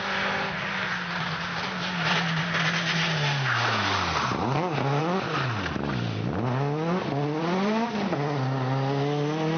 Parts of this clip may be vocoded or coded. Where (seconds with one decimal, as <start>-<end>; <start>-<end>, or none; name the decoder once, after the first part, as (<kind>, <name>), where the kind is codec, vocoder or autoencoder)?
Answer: none